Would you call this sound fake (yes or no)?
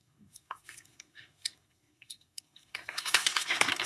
yes